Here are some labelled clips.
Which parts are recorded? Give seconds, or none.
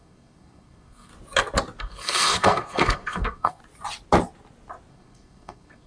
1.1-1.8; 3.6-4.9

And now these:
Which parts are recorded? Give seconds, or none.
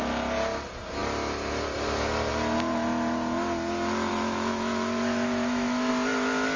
0.0-4.1; 5.9-6.6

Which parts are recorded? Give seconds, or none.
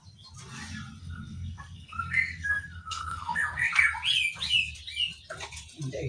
0.0-1.0; 3.7-6.1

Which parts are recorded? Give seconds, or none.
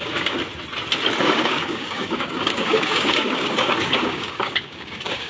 0.4-1.2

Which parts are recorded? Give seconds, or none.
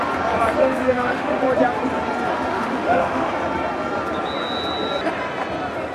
0.0-0.6; 1.4-2.5; 3.3-5.9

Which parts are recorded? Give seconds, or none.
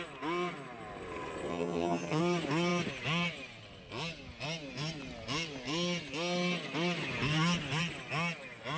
0.0-1.5; 2.2-8.8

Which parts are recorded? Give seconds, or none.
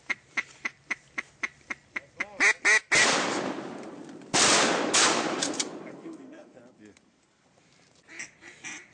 0.0-5.9; 6.6-8.9